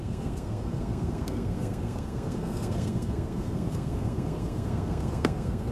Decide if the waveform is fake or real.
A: fake